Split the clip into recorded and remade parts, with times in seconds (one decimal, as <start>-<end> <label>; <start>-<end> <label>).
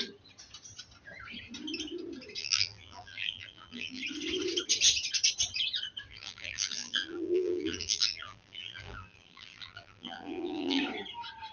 0.0-2.4 recorded; 2.4-4.0 remade; 4.0-6.1 recorded; 6.1-10.8 remade; 10.8-11.5 recorded